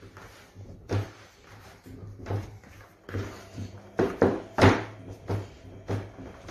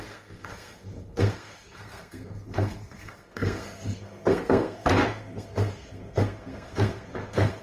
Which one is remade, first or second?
second